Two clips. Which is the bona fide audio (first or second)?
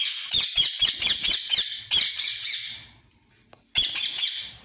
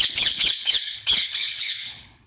first